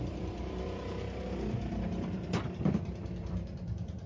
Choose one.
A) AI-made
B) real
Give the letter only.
A